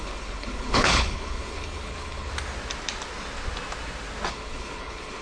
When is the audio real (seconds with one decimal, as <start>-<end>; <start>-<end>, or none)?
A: 2.3-4.3